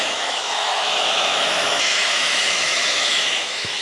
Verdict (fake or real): fake